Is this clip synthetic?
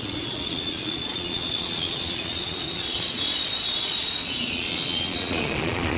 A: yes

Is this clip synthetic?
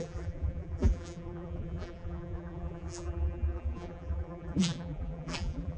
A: yes